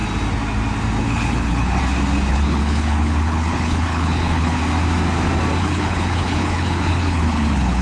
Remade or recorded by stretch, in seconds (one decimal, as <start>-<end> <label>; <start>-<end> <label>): 0.0-1.0 recorded; 1.0-1.8 remade; 1.8-2.3 recorded; 2.3-4.6 remade; 4.6-5.6 recorded; 5.6-7.8 remade